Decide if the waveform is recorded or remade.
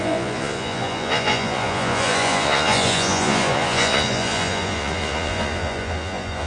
remade